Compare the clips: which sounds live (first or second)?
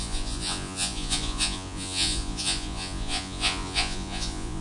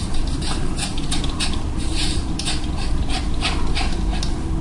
second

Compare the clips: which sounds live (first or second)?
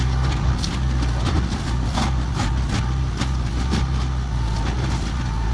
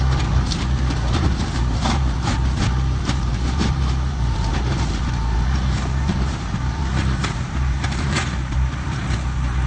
first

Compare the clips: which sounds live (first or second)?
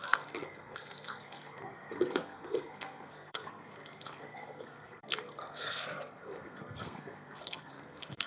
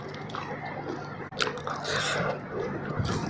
second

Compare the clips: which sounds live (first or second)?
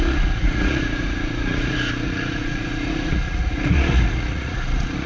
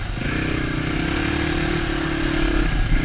second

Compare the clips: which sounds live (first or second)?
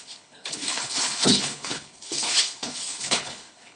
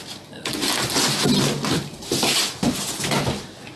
second